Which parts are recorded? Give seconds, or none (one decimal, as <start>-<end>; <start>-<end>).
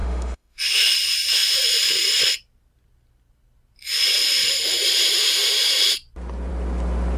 0.6-7.2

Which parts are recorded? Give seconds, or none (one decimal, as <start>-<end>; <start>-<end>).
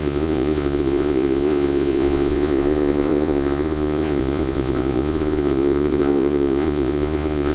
none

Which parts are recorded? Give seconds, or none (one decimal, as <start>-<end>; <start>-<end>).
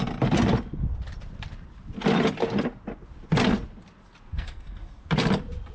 0.0-4.3; 5.1-5.7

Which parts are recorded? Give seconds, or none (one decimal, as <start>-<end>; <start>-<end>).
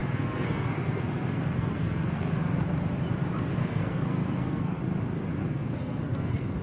2.6-3.6; 4.8-5.4